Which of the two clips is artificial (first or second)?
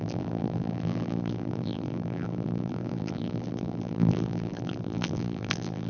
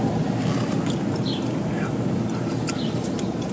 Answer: first